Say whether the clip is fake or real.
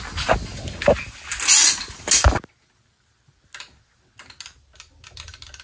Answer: real